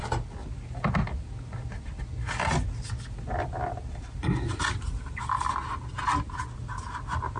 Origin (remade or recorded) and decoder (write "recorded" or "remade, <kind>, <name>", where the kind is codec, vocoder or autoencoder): recorded